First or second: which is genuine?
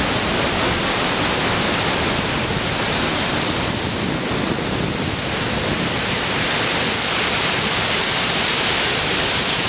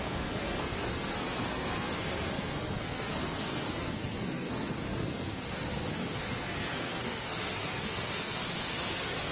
first